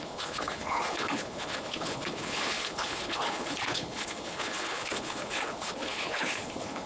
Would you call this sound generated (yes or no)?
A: yes